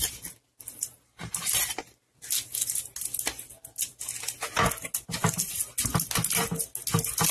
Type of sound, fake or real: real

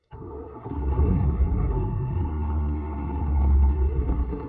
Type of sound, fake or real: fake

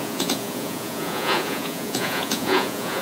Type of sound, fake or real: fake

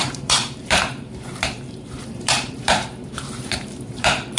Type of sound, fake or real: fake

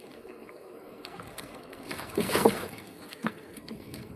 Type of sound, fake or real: fake